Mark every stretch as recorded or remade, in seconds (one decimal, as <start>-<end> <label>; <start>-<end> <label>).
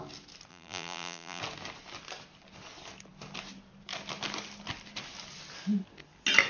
0.0-0.5 recorded; 0.5-1.4 remade; 1.4-6.5 recorded